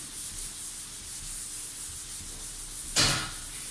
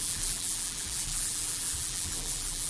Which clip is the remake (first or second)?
second